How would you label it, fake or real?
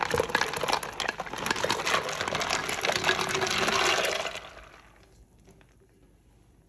real